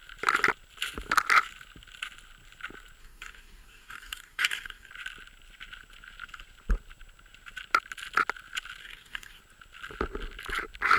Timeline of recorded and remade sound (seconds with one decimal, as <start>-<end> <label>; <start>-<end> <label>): 0.0-3.0 recorded; 3.0-4.9 remade; 4.9-8.8 recorded; 8.8-9.4 remade; 9.4-11.0 recorded